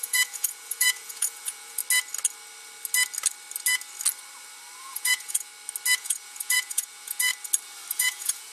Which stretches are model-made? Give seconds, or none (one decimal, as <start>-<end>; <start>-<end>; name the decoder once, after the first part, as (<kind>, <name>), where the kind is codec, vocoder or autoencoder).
0.0-1.8 (vocoder, Vocos); 4.8-5.5; 6.0-7.3; 7.9-8.5